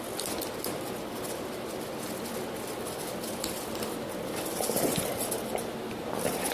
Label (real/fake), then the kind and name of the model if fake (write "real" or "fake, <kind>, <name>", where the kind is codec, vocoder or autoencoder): real